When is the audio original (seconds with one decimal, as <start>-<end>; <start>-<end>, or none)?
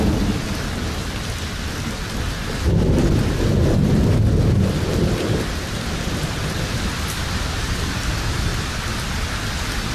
0.0-9.9